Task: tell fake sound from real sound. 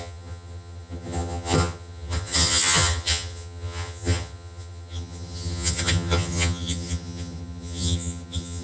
fake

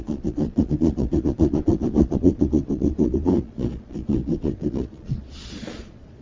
fake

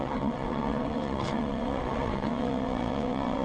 fake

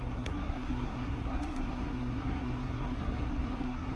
fake